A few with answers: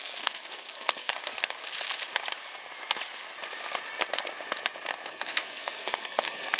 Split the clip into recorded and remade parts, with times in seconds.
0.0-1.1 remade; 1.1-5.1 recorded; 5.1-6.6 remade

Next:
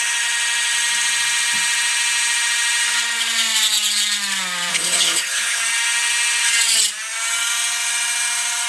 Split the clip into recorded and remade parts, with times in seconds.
0.0-4.7 recorded; 4.7-5.6 remade; 5.6-8.7 recorded

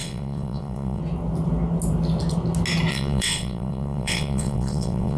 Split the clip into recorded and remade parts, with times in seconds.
0.0-1.0 remade; 1.0-2.9 recorded; 2.9-5.2 remade